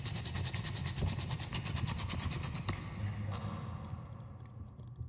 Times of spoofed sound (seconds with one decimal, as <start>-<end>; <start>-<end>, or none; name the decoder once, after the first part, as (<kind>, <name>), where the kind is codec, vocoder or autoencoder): none